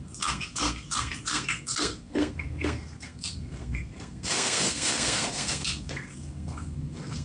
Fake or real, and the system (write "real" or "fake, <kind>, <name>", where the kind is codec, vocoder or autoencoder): fake, codec, SNAC